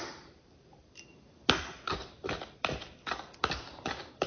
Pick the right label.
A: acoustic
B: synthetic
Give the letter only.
B